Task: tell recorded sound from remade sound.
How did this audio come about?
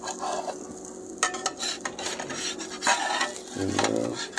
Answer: recorded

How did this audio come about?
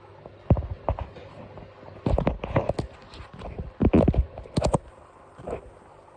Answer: recorded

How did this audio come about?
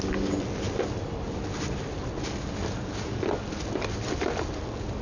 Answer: recorded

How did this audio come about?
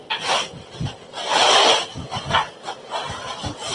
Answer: recorded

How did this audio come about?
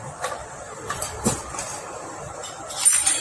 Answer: remade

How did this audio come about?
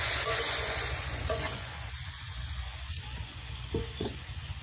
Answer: remade